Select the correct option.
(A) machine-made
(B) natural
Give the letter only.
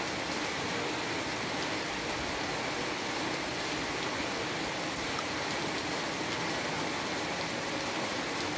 B